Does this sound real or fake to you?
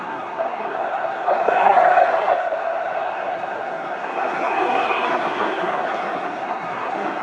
fake